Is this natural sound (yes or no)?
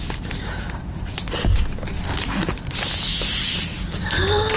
yes